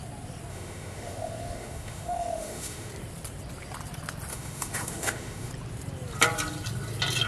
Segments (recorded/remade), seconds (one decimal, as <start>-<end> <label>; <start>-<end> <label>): 0.0-0.5 recorded; 0.5-2.9 remade; 2.9-4.3 recorded; 4.3-5.5 remade; 5.5-7.3 recorded

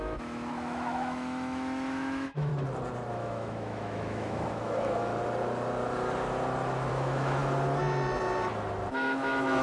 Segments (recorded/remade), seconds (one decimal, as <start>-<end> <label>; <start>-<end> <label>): 0.0-2.5 remade; 2.5-3.1 recorded; 3.1-5.1 remade; 5.1-6.9 recorded; 6.9-7.4 remade; 7.4-8.9 recorded; 8.9-9.6 remade

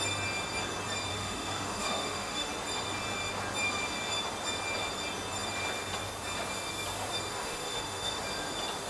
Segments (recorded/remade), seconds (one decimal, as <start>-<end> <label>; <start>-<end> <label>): 0.0-1.1 recorded; 1.1-2.5 remade; 2.5-7.3 recorded; 7.3-8.2 remade; 8.2-8.9 recorded